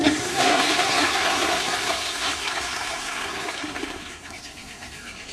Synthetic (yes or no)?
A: yes